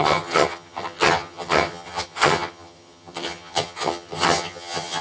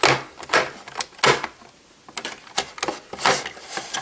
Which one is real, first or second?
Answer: second